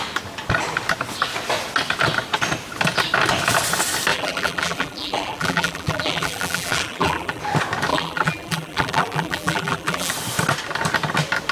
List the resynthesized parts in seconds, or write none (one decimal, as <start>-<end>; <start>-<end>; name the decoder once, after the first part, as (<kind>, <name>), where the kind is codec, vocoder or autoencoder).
4.1-7.4 (vocoder, BigVGAN v2); 7.9-10.1